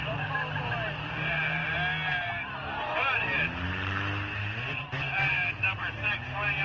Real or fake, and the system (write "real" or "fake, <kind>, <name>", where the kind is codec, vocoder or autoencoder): real